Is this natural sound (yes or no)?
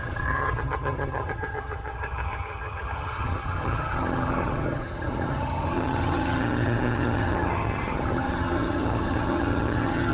no